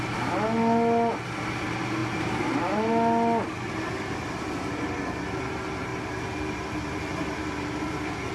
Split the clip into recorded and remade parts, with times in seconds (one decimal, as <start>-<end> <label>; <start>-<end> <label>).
0.0-2.0 recorded; 2.0-2.9 remade; 2.9-8.3 recorded